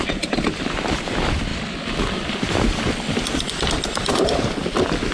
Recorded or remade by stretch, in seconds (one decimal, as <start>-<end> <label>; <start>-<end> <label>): 0.0-1.5 remade; 1.5-2.3 recorded; 2.3-5.1 remade